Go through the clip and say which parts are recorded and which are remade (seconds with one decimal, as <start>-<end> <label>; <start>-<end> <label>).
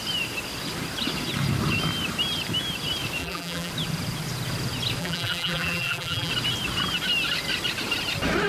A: 0.0-3.2 recorded; 3.2-3.7 remade; 3.7-5.0 recorded; 5.0-6.3 remade; 6.3-8.5 recorded